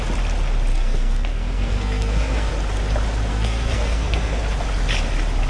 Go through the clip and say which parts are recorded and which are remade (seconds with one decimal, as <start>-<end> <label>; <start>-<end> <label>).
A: 0.0-0.7 recorded; 0.7-2.5 remade; 2.5-3.3 recorded; 3.3-4.4 remade; 4.4-5.5 recorded